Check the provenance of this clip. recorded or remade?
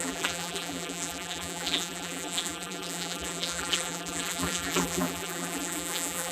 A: remade